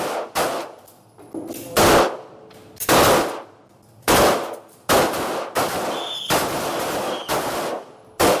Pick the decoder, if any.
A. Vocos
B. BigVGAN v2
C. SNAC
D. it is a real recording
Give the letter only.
D